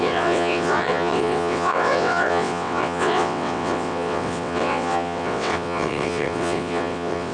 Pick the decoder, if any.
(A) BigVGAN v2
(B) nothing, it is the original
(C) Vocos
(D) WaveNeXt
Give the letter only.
D